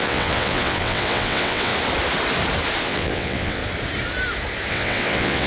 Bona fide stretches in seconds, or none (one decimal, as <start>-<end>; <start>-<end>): 1.7-2.8; 3.6-4.7